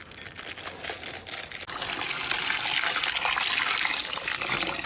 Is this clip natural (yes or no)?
yes